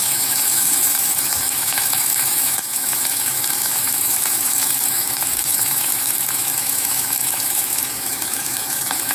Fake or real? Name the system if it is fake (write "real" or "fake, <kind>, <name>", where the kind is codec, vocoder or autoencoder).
fake, autoencoder, DAC-VAE